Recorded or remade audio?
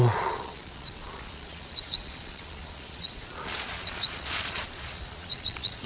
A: remade